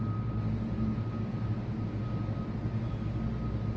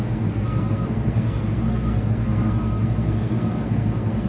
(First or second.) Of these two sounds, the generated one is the second